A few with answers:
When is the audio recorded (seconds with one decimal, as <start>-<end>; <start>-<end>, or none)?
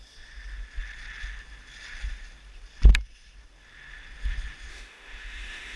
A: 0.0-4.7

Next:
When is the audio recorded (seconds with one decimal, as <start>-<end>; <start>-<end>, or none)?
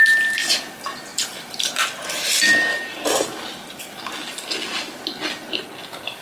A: 0.0-1.1; 1.9-2.7; 3.8-6.2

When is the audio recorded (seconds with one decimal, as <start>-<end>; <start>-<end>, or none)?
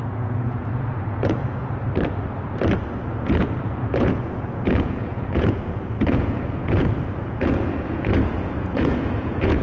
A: 1.6-3.2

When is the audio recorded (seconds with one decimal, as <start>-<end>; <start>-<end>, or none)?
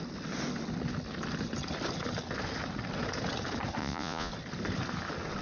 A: 0.0-3.8; 4.3-5.4